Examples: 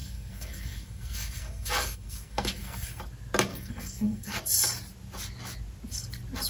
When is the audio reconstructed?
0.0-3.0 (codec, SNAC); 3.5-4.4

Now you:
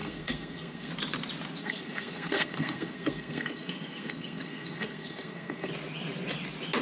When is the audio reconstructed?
0.0-0.9 (codec, SNAC); 1.6-5.7

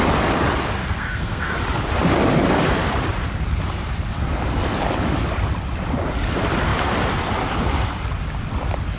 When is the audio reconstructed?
0.8-1.5 (codec, SNAC)

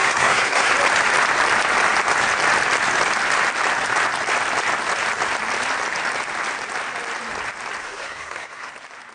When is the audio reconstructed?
0.0-0.7 (codec, SNAC); 7.8-8.7